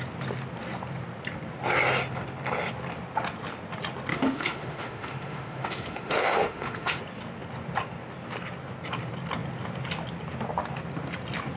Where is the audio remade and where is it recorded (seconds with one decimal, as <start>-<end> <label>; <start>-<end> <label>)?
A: 0.0-4.1 recorded; 4.1-7.0 remade; 7.0-11.6 recorded

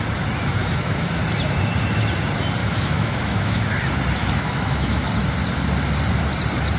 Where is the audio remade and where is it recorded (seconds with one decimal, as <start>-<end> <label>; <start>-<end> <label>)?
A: 0.0-0.6 recorded; 0.6-1.2 remade; 1.2-2.6 recorded; 2.6-3.6 remade; 3.6-4.2 recorded; 4.2-5.0 remade; 5.0-6.8 recorded

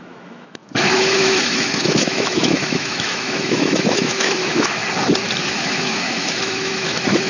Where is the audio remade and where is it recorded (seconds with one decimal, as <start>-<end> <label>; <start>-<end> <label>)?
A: 0.0-4.8 remade; 4.8-5.4 recorded; 5.4-7.3 remade

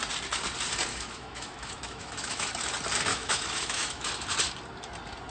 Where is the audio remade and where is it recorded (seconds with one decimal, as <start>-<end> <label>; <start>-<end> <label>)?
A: 0.0-0.9 recorded; 0.9-2.5 remade; 2.5-3.1 recorded; 3.1-4.1 remade; 4.1-5.3 recorded